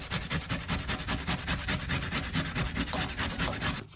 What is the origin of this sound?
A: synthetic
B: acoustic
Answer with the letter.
B